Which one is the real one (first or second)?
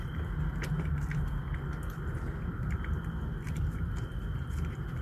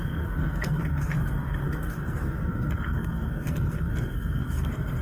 first